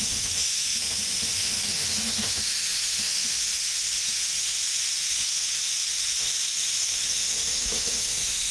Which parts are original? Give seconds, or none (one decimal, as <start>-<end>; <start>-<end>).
none